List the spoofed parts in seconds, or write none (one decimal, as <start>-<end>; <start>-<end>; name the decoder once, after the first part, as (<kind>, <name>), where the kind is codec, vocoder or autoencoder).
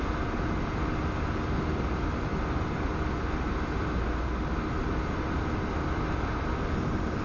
none